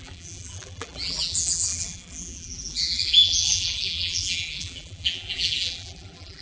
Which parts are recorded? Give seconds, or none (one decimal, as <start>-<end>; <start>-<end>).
none

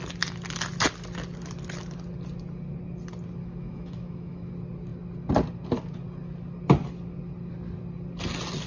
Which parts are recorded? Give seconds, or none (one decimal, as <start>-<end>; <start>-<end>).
0.0-3.4; 4.5-8.7

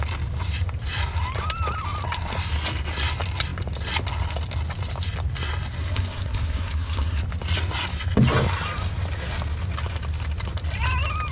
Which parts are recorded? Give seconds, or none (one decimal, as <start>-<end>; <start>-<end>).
0.0-5.8; 7.2-11.3

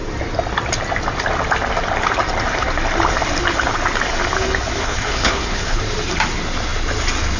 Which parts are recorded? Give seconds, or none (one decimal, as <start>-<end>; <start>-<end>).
0.0-4.8; 5.8-7.4

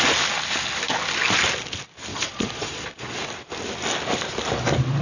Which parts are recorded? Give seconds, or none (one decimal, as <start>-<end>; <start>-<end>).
0.0-2.1; 3.1-5.0